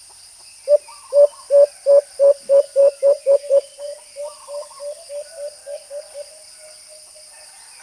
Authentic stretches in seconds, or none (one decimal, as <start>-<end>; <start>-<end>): 0.0-2.8; 4.2-5.6; 6.1-7.8